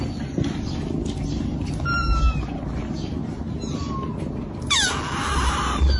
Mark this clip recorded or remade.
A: recorded